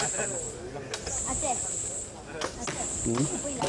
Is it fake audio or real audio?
real